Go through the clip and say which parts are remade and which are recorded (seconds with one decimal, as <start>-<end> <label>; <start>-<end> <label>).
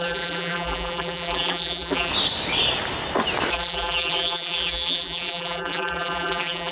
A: 0.0-2.1 remade; 2.1-3.5 recorded; 3.5-6.7 remade